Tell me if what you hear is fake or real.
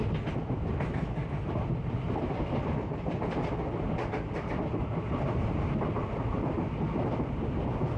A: real